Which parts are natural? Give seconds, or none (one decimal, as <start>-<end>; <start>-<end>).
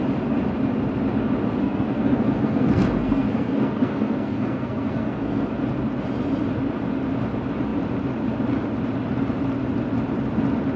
0.0-1.6; 5.5-10.8